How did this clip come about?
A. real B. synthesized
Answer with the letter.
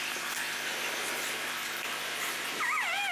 A